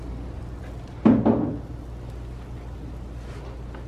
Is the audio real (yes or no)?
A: yes